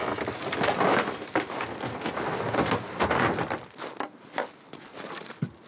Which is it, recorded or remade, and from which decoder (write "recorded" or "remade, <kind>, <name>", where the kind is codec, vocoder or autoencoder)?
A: recorded